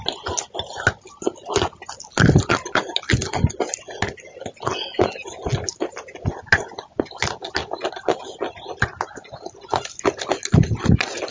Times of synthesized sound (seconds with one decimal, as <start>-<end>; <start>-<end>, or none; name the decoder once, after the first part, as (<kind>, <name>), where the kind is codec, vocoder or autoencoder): none